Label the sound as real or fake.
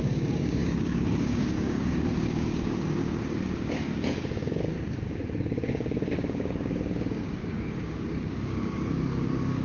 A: fake